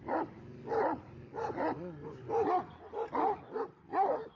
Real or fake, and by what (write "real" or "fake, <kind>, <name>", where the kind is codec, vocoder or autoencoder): real